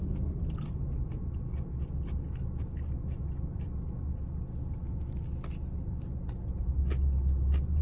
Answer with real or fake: real